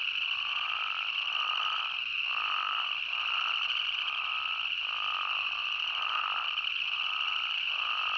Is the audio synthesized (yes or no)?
no